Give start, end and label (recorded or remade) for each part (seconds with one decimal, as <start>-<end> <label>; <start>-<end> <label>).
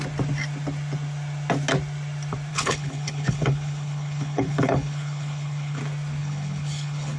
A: 0.0-2.5 recorded; 2.5-5.8 remade; 5.8-6.2 recorded; 6.2-7.2 remade